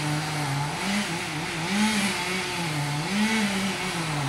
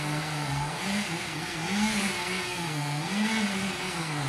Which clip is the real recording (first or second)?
first